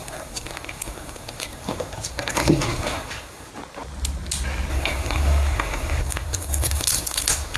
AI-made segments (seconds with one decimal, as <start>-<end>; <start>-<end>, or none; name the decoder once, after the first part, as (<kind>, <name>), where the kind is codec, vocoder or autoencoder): 0.0-3.5 (codec, SNAC); 4.7-7.6